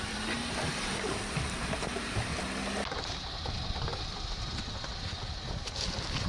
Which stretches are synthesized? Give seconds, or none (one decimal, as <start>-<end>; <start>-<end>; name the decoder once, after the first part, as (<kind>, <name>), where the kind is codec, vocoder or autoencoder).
0.0-2.3 (vocoder, BigVGAN v2)